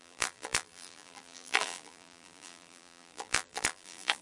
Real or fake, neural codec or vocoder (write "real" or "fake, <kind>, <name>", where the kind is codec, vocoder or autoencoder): fake, vocoder, BigVGAN v2